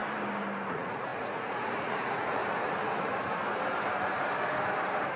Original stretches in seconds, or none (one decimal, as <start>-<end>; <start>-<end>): 0.0-0.7; 2.4-5.2